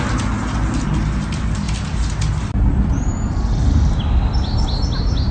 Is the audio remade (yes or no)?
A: no